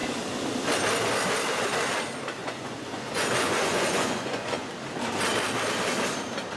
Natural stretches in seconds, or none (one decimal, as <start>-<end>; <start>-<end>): 0.0-2.4; 4.7-6.6